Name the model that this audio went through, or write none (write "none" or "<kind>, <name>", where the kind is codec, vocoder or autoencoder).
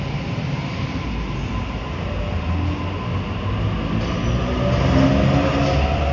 none